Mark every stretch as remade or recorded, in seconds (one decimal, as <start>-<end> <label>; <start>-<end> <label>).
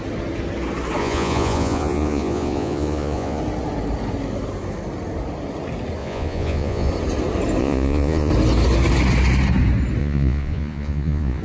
0.0-1.0 recorded; 1.0-3.4 remade; 3.4-6.0 recorded; 6.0-6.9 remade; 6.9-7.6 recorded; 7.6-8.3 remade; 8.3-10.0 recorded; 10.0-11.4 remade